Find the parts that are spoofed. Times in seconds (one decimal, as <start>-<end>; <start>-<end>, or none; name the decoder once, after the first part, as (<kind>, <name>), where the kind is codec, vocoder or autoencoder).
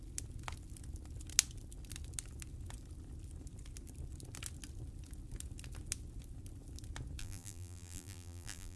7.2-8.8 (vocoder, BigVGAN v2)